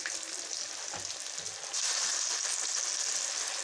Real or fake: real